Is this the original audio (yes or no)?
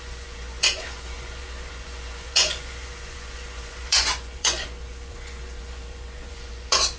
no